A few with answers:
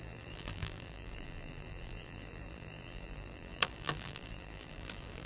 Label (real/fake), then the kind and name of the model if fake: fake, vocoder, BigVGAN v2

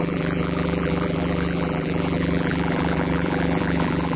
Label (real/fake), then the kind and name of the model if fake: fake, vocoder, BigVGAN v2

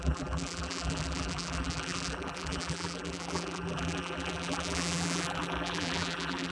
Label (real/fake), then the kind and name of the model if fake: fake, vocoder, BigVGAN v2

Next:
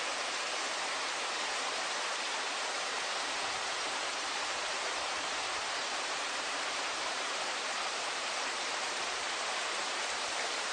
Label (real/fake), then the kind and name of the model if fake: fake, vocoder, BigVGAN v2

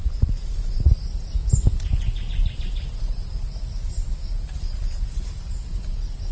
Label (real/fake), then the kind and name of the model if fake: real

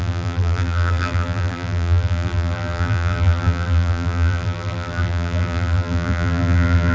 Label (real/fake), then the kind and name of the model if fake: fake, vocoder, BigVGAN v2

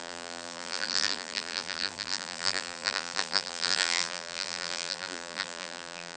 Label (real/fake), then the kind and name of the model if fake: fake, vocoder, BigVGAN v2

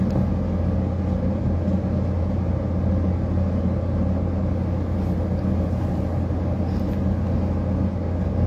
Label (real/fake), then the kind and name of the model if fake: real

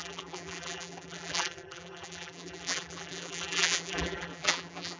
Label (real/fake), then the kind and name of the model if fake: fake, vocoder, BigVGAN v2